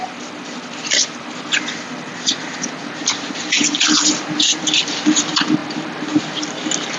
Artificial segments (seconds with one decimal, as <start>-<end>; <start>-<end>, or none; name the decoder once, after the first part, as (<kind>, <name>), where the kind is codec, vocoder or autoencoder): none